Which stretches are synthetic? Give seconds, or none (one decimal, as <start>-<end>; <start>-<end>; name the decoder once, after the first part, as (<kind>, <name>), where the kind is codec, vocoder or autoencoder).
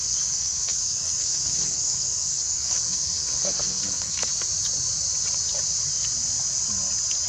0.0-4.3 (codec, SNAC)